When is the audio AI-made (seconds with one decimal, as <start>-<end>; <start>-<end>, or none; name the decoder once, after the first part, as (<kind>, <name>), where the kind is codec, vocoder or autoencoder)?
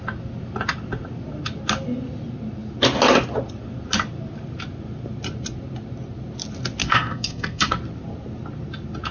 6.8-7.8 (codec, SNAC)